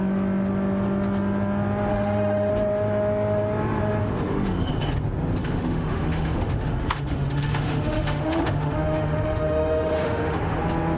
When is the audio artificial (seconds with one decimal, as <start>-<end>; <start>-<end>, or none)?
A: 1.9-2.5; 4.0-4.7; 5.4-10.6